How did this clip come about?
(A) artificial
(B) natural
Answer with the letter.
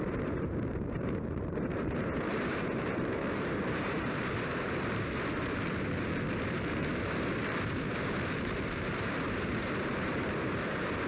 A